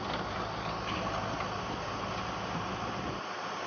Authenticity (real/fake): real